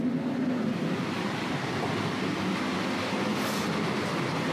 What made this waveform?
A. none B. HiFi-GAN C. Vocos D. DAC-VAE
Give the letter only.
A